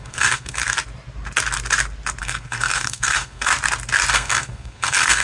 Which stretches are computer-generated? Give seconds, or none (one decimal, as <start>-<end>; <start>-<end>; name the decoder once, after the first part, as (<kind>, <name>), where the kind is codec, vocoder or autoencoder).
0.0-0.6 (codec, SNAC); 2.2-3.5; 4.1-5.2